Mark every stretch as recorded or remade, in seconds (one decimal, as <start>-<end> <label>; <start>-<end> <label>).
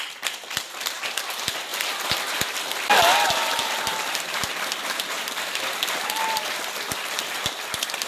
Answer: 0.0-1.7 remade; 1.7-2.9 recorded; 2.9-8.1 remade